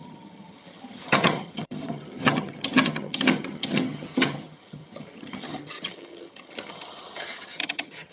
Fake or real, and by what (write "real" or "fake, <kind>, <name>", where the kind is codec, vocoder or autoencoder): fake, vocoder, HiFi-GAN